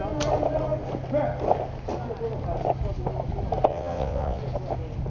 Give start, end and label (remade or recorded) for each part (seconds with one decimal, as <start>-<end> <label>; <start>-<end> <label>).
0.0-3.7 recorded; 3.7-4.4 remade; 4.4-5.1 recorded